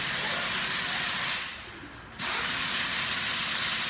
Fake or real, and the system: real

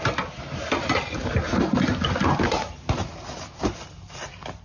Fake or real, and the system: real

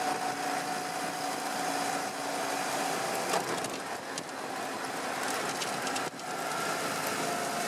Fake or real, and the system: real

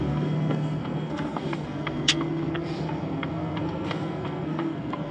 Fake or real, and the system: fake, codec, SNAC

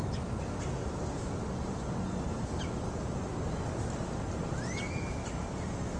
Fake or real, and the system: real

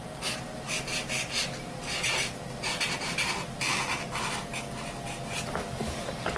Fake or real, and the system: real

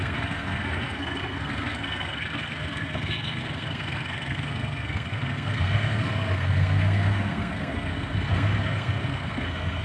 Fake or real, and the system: fake, codec, SNAC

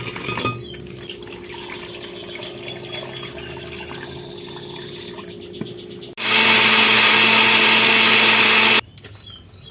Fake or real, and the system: real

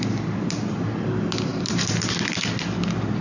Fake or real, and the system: real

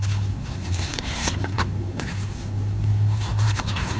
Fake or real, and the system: fake, codec, SNAC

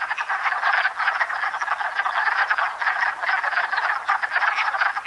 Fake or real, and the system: real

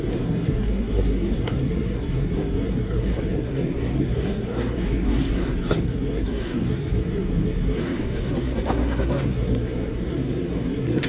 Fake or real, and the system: fake, codec, SNAC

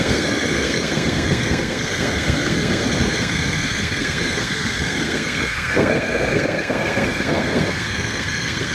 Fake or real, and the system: fake, codec, SNAC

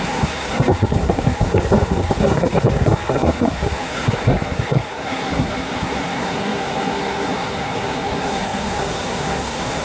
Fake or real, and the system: fake, codec, SNAC